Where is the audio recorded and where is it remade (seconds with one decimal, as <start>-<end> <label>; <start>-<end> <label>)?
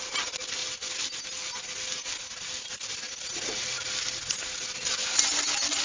0.0-5.8 recorded